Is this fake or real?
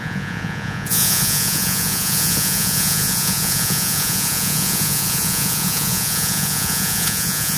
fake